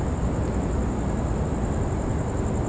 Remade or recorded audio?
recorded